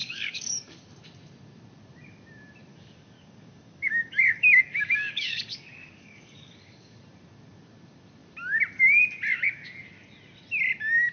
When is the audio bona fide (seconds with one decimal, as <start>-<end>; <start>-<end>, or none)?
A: 0.9-2.7; 7.0-11.1